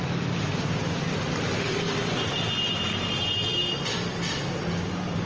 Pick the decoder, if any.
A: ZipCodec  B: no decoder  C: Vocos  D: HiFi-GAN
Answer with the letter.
B